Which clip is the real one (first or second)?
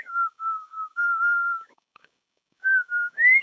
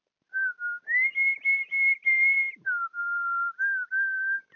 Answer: second